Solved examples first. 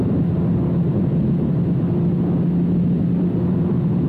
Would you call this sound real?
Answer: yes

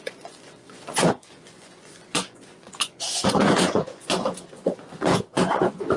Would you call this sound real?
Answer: no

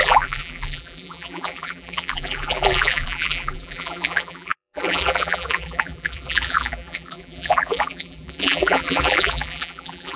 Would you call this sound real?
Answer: no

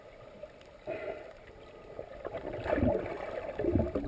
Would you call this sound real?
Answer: yes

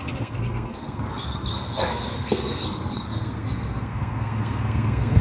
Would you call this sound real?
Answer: no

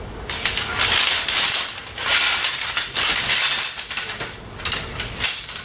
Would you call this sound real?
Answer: yes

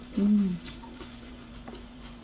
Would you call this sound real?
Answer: no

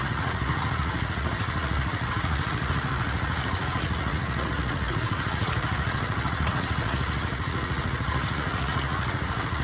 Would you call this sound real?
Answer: no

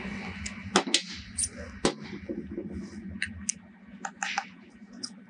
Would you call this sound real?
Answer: yes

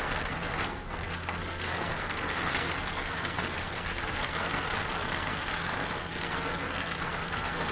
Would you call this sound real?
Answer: no